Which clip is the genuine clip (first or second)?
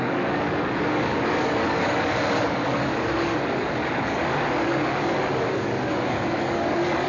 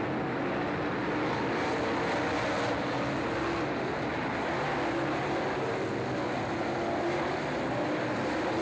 second